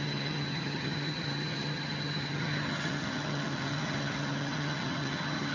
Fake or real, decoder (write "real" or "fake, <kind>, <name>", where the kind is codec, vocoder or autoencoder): fake, vocoder, HiFi-GAN